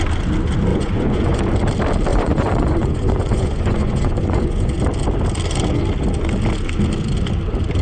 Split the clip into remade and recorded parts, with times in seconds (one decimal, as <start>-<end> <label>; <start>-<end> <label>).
0.0-0.7 recorded; 0.7-1.4 remade; 1.4-2.1 recorded; 2.1-4.8 remade; 4.8-7.8 recorded